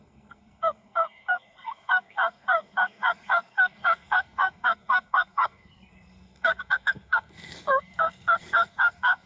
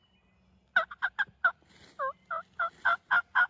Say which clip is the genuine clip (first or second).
second